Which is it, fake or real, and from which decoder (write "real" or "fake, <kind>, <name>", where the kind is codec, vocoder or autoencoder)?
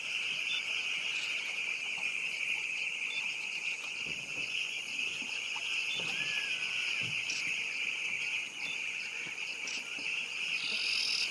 fake, vocoder, Vocos